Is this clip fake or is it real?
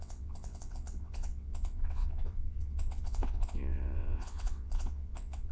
fake